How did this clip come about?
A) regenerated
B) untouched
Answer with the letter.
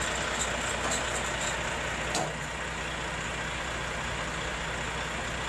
B